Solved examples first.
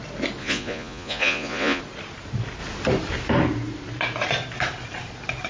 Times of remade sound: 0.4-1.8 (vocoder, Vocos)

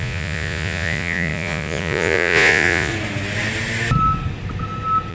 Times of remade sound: 0.0-2.9 (vocoder, Vocos)

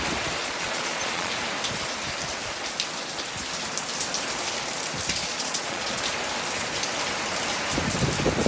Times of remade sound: 0.4-1.3 (vocoder, Vocos); 5.2-6.0

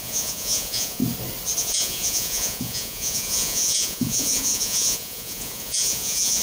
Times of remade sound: 0.0-1.0 (vocoder, Vocos); 1.6-6.4

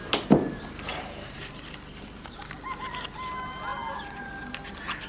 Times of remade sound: none

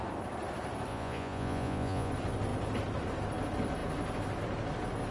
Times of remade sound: 0.9-2.1 (vocoder, Vocos)

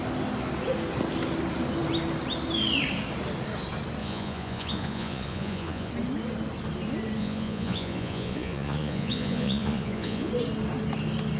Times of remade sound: 4.0-5.9 (vocoder, Vocos); 7.2-10.3